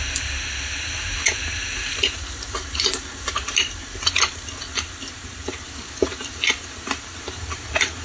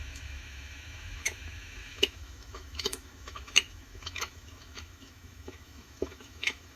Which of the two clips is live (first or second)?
first